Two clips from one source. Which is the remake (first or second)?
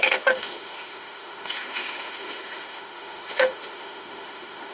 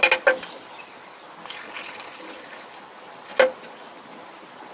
first